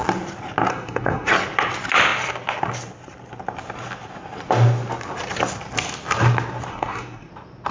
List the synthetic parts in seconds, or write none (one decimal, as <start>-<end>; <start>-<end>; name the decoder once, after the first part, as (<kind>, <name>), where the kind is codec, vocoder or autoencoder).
0.7-1.3 (codec, SNAC); 6.7-7.3